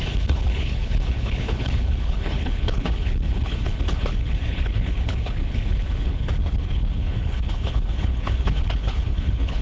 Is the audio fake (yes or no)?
yes